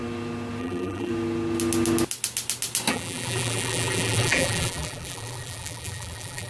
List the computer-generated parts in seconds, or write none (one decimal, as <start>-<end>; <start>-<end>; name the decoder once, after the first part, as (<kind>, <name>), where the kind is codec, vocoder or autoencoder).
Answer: 0.6-1.1 (vocoder, BigVGAN v2); 2.9-6.5